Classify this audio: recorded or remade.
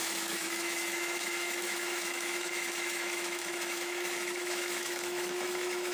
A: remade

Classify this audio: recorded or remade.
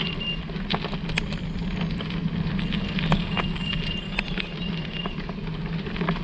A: recorded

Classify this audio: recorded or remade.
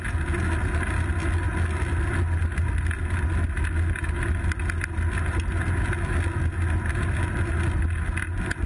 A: recorded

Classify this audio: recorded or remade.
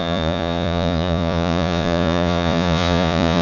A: remade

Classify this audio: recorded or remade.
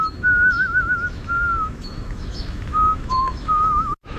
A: remade